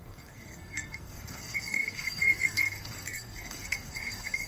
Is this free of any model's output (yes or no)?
no